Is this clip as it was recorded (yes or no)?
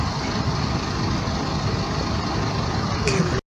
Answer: yes